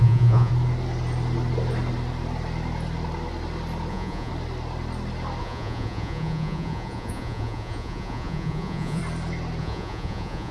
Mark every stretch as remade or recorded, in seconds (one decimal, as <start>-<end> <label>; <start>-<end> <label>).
0.0-0.5 remade; 0.5-3.9 recorded; 3.9-4.3 remade; 4.3-5.4 recorded; 5.4-9.0 remade; 9.0-9.6 recorded; 9.6-10.5 remade